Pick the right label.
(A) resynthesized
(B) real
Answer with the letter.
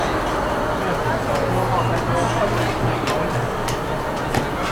B